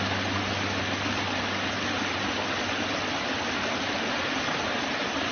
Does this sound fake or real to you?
real